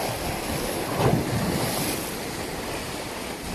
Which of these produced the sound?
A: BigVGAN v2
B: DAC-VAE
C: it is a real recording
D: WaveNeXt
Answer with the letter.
A